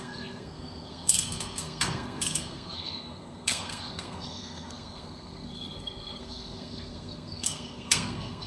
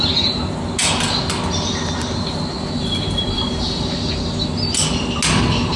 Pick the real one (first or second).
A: second